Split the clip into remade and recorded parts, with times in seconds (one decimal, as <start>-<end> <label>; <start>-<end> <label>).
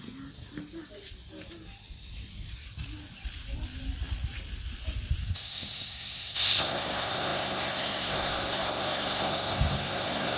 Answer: 0.0-5.2 recorded; 5.2-10.4 remade